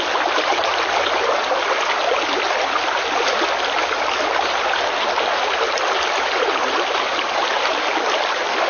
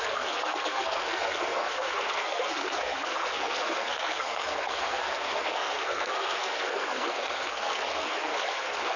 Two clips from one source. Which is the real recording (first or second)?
first